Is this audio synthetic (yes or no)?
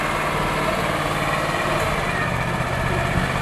no